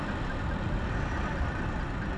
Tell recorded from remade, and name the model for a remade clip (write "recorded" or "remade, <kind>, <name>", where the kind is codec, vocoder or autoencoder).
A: recorded